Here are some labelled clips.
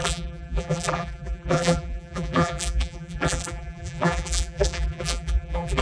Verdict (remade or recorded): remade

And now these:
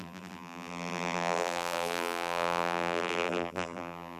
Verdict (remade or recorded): remade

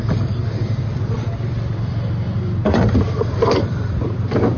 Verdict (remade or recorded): remade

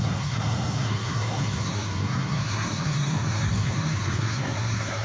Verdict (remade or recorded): remade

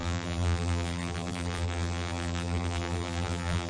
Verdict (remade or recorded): remade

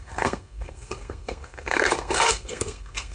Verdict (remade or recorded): remade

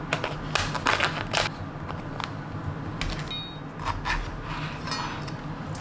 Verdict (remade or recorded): recorded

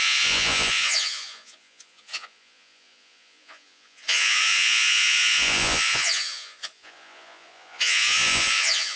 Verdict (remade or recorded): remade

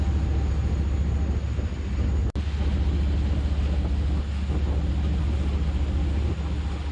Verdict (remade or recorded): recorded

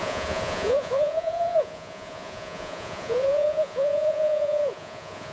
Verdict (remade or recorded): remade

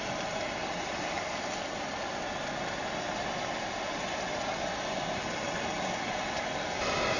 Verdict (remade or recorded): recorded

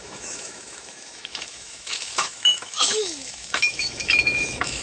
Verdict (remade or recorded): remade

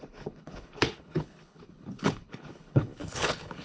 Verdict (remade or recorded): remade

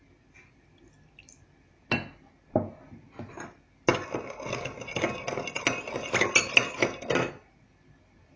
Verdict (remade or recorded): recorded